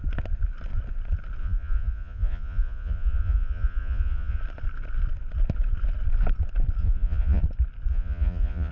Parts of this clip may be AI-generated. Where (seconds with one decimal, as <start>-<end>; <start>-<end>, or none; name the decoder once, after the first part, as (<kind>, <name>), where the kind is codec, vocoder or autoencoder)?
1.4-4.4 (vocoder, Vocos); 6.8-7.4; 7.9-8.7